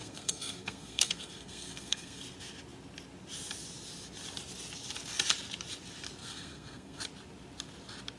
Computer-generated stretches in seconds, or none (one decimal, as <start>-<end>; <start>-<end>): 0.0-2.2; 6.2-7.0